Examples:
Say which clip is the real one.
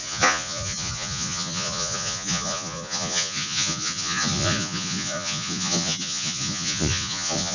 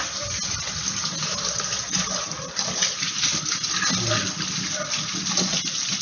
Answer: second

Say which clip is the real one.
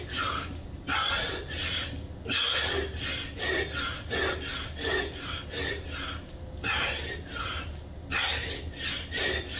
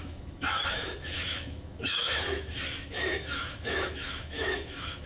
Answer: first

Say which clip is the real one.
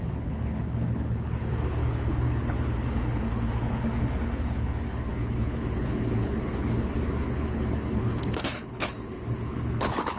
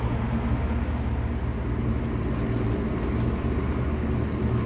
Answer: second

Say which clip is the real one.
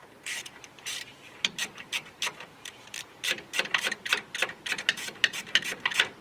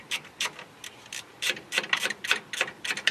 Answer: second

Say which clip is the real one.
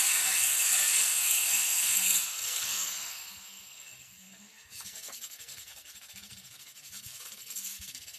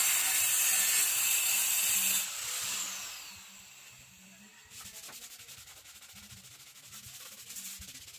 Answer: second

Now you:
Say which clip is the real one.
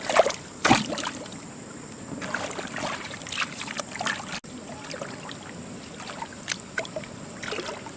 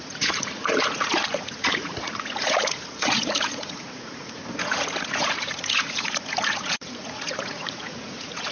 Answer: first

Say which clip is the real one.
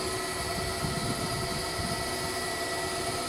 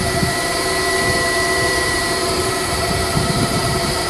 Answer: first